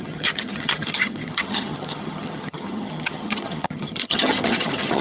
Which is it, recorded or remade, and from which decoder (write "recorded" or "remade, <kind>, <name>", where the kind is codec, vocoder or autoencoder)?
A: remade, vocoder, HiFi-GAN